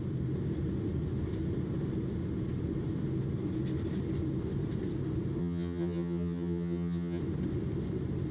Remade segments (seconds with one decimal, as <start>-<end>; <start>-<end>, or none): 5.4-7.2